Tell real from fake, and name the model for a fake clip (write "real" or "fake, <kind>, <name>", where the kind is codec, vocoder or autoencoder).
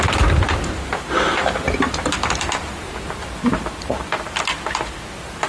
real